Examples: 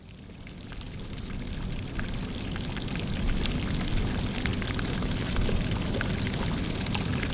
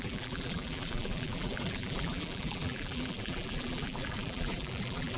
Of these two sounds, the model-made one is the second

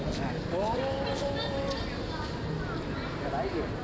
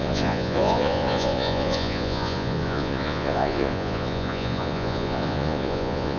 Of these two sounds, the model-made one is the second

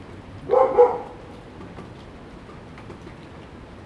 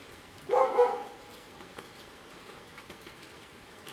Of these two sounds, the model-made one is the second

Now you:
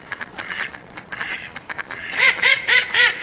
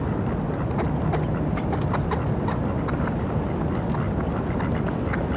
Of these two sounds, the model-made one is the first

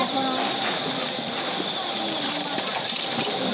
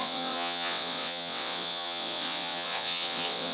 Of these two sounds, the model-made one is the second